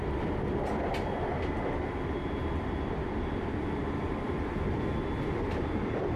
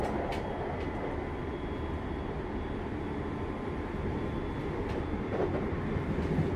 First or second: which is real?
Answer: second